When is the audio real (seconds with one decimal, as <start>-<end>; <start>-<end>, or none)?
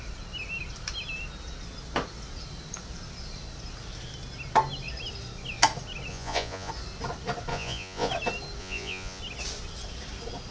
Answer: 0.0-6.1; 6.7-7.5; 8.1-8.6; 9.2-10.5